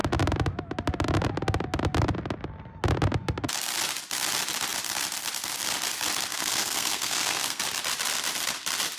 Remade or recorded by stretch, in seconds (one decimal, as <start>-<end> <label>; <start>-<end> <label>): 0.0-6.3 recorded; 6.3-7.6 remade; 7.6-9.0 recorded

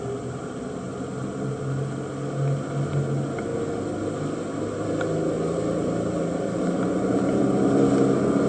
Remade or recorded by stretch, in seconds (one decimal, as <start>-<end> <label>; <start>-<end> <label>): 0.0-8.5 recorded

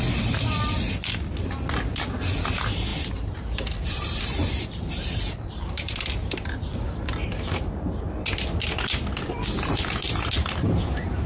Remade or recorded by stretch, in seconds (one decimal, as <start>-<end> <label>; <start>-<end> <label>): 0.0-11.3 recorded

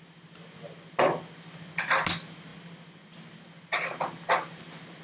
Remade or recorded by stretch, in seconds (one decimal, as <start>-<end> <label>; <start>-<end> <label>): 0.0-5.0 recorded